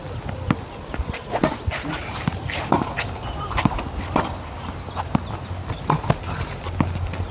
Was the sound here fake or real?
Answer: real